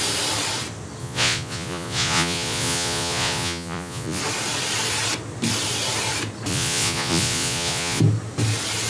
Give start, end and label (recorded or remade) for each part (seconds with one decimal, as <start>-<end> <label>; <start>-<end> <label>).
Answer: 0.0-1.0 recorded; 1.0-4.2 remade; 4.2-6.5 recorded; 6.5-8.0 remade; 8.0-8.9 recorded